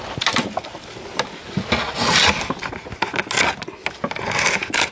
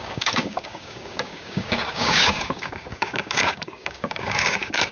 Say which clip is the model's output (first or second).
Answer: second